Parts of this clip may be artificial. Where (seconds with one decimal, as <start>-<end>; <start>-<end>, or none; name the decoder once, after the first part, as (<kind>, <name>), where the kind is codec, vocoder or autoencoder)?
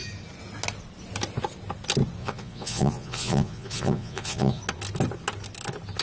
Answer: 2.2-4.6 (vocoder, Vocos)